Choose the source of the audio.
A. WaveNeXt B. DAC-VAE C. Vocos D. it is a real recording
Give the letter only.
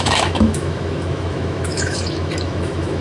B